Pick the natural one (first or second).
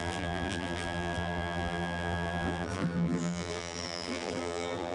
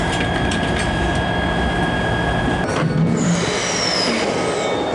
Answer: second